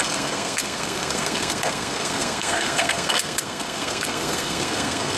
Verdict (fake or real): fake